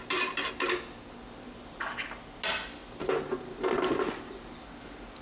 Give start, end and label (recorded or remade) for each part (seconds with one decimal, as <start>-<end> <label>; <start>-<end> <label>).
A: 0.0-5.2 recorded